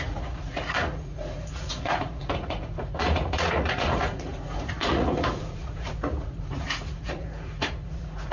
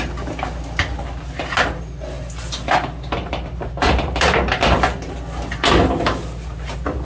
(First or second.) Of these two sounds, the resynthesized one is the first